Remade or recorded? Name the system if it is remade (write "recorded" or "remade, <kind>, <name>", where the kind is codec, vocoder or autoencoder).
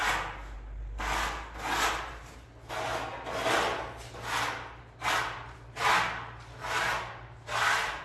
recorded